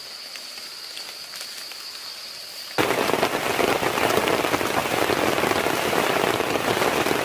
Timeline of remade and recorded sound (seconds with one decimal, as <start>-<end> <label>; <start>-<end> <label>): 0.0-7.2 recorded